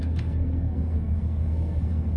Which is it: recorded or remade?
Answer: remade